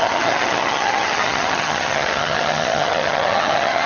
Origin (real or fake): fake